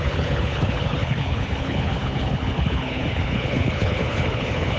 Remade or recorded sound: remade